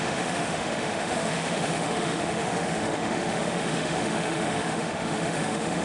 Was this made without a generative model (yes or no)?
no